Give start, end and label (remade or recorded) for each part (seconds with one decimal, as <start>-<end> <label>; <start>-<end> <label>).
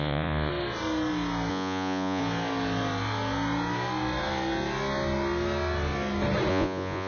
0.0-0.5 remade; 0.5-1.5 recorded; 1.5-2.2 remade; 2.2-6.5 recorded; 6.5-7.1 remade